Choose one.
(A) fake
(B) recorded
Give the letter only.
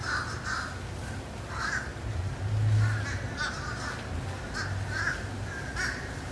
B